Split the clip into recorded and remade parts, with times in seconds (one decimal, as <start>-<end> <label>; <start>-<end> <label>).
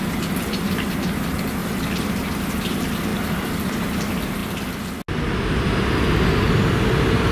0.0-3.1 recorded; 3.1-3.7 remade; 3.7-7.3 recorded